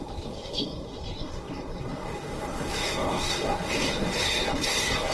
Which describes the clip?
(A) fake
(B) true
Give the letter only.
A